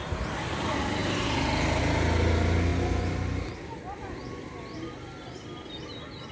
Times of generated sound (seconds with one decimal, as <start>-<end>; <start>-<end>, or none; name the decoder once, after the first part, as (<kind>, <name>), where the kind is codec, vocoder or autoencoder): none